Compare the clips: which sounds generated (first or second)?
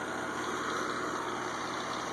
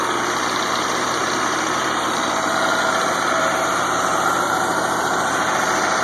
second